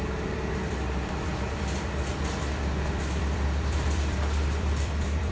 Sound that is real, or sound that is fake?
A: fake